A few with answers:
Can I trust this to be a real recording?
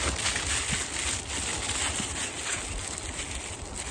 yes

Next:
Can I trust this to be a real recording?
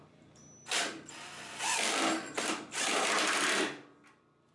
no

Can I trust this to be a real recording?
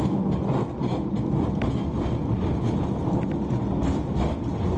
yes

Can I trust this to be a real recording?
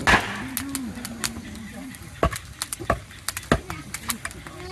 yes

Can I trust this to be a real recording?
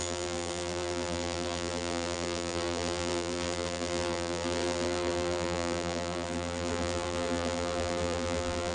no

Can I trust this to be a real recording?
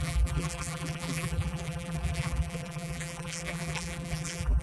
no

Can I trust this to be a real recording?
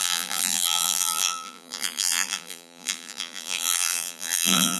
no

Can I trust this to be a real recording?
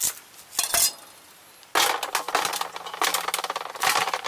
yes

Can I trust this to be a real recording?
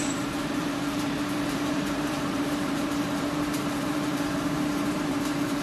no